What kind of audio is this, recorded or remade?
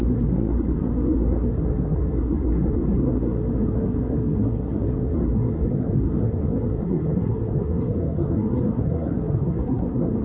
remade